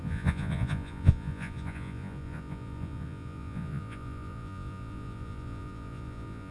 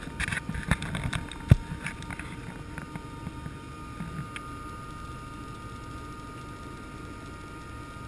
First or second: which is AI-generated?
first